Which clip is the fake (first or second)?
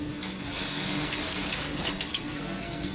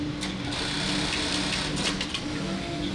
first